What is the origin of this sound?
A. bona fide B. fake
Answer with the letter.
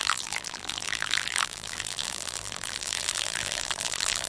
B